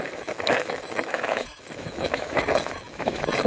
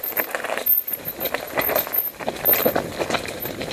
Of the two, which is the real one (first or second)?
second